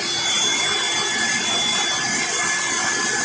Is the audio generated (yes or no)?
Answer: no